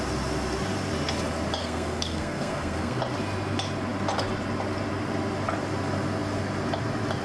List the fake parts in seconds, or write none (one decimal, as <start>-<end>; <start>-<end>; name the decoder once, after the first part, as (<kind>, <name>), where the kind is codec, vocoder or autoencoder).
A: 1.6-3.0 (codec, SNAC)